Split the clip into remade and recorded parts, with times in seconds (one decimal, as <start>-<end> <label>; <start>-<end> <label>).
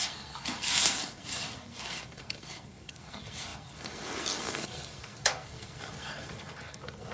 0.0-7.1 remade